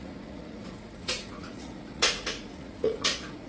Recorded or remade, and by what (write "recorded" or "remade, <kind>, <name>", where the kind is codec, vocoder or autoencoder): remade, vocoder, Vocos